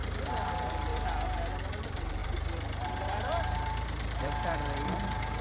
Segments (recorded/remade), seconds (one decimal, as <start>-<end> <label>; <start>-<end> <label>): 0.0-0.9 remade; 0.9-1.8 recorded; 1.8-5.4 remade